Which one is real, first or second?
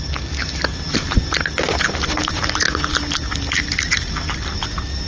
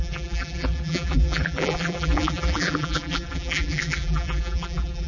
first